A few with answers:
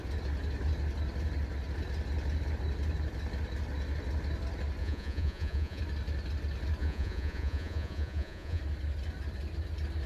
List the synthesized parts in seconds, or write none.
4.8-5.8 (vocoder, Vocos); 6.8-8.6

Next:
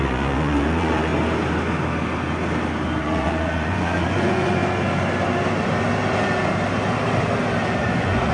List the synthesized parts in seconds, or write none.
0.0-1.1 (vocoder, Vocos); 3.0-4.6; 7.8-8.3